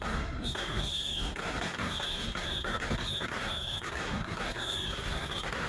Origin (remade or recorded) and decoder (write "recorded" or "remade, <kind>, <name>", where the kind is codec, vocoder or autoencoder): remade, codec, SNAC